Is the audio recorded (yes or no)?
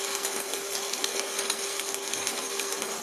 no